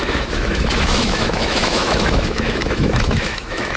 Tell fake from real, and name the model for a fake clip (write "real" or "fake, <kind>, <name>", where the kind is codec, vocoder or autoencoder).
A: fake, autoencoder, DAC-VAE